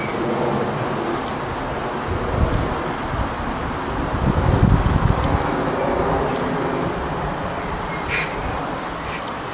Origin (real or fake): real